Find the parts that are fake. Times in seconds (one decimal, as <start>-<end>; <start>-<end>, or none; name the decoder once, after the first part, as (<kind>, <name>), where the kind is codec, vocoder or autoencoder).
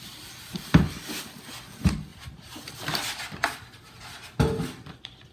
2.1-4.1 (vocoder, BigVGAN v2)